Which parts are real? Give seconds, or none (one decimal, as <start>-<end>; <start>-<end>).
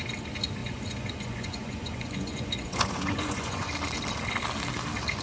0.0-0.6; 3.7-5.2